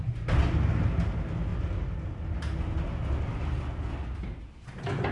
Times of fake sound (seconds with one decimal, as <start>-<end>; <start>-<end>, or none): none